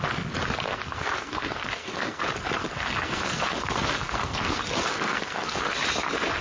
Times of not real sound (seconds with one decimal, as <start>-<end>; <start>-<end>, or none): 0.7-2.2; 2.6-5.7